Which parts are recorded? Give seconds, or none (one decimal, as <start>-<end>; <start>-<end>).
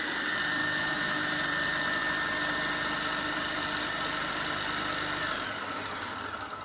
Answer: 0.0-0.6; 1.4-6.6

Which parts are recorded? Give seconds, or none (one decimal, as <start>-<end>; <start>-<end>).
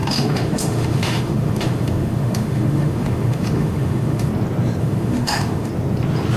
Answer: 4.3-4.8; 5.7-6.4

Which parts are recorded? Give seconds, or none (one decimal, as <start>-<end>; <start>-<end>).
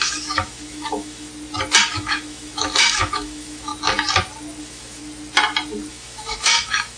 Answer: 1.3-1.9; 3.7-4.6; 5.0-5.9